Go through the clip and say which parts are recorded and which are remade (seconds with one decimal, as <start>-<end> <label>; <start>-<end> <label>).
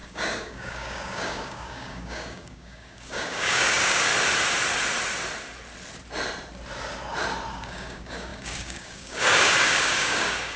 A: 0.0-4.1 remade; 4.1-7.5 recorded; 7.5-10.6 remade